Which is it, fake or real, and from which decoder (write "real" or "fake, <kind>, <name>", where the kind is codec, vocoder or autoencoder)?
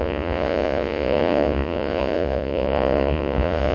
fake, vocoder, Vocos